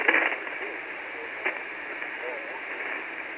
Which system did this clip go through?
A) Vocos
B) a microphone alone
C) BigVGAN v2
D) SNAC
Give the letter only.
B